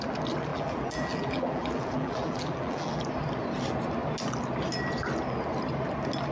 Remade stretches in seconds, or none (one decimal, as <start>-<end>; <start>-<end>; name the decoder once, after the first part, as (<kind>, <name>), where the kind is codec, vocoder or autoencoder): 0.5-3.0 (vocoder, BigVGAN v2)